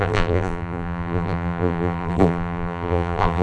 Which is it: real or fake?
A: fake